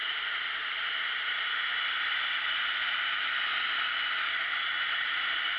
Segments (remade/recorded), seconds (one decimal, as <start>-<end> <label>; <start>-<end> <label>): 0.0-5.6 recorded